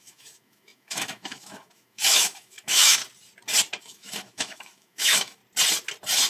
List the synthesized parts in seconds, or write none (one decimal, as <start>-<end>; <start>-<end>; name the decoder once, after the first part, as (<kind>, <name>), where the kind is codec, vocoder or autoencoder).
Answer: 0.0-3.0 (autoencoder, DAC-VAE); 3.8-5.4